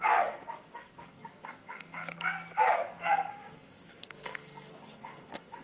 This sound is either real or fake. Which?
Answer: fake